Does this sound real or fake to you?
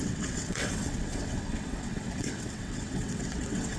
fake